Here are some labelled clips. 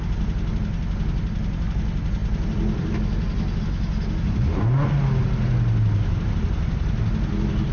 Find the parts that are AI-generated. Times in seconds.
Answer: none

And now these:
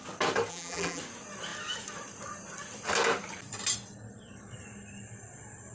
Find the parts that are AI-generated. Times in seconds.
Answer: 0.5-1.0 (vocoder, BigVGAN v2)

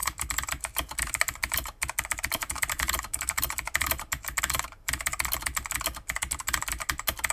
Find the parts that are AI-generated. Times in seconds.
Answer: 0.0-5.1 (vocoder, BigVGAN v2)